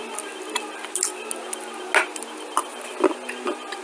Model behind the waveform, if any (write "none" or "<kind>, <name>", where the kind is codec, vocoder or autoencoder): none